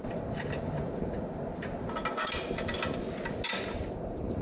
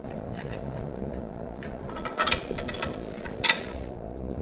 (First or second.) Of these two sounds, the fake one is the second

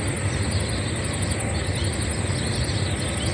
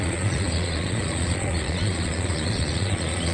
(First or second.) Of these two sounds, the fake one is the second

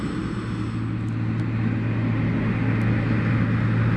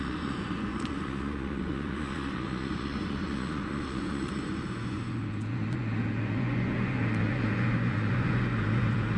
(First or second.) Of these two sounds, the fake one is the second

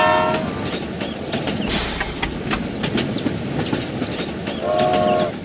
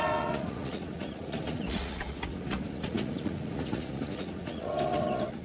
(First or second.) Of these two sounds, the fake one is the second